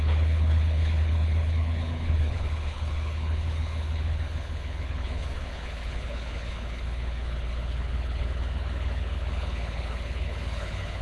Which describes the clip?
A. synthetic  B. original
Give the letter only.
A